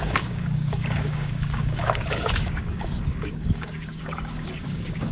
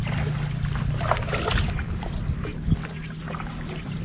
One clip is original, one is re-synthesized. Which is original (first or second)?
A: second